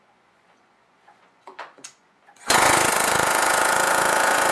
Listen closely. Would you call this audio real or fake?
fake